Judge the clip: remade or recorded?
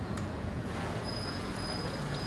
remade